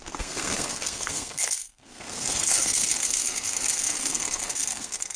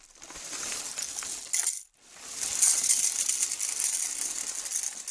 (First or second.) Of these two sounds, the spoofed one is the first